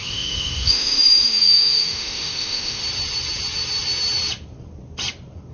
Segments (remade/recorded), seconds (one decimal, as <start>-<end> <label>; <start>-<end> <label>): 0.0-2.8 remade; 2.8-5.5 recorded

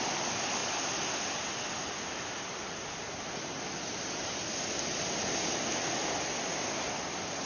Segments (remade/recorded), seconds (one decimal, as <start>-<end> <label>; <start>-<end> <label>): 0.0-7.5 recorded